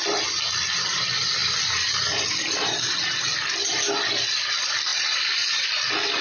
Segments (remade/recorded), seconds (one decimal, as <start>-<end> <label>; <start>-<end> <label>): 0.0-1.4 recorded; 1.4-2.2 remade; 2.2-4.9 recorded; 4.9-5.6 remade; 5.6-6.2 recorded